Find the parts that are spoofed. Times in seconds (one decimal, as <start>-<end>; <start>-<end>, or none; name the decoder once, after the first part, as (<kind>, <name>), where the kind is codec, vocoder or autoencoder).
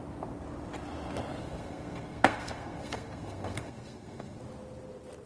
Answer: 1.4-4.4 (codec, SNAC)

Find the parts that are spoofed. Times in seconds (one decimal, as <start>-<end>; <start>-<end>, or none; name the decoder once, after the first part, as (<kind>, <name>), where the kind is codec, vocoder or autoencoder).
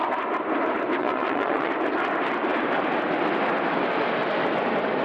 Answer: 1.0-1.7 (vocoder, Vocos)